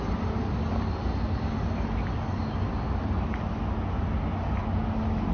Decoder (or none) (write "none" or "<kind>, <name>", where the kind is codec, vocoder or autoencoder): none